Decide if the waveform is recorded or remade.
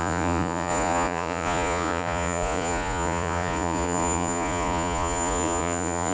remade